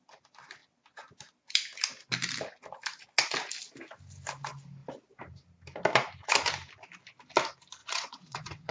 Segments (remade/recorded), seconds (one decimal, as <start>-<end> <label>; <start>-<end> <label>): 0.0-7.8 recorded; 7.8-8.7 remade